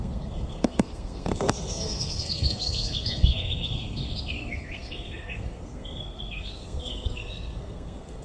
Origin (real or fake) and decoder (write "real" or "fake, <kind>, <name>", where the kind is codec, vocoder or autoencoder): fake, codec, SNAC